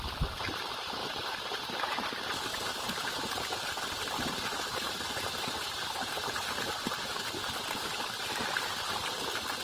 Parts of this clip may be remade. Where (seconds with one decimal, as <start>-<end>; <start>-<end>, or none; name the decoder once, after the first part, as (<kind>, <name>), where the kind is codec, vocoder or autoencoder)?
1.0-2.1 (vocoder, BigVGAN v2); 2.5-7.6